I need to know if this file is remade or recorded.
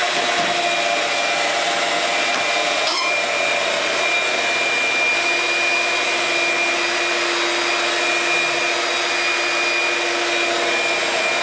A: recorded